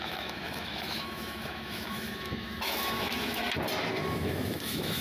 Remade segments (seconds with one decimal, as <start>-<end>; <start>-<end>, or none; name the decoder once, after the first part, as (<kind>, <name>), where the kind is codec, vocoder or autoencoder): 0.0-3.4 (autoencoder, DAC-VAE); 4.0-5.0